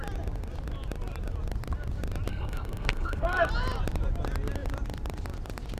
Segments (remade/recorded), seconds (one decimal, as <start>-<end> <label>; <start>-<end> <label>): 0.0-2.3 recorded; 2.3-3.5 remade; 3.5-5.8 recorded